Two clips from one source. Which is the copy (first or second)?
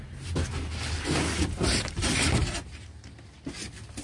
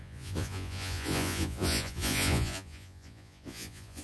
second